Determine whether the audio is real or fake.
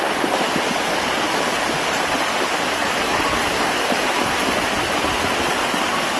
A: real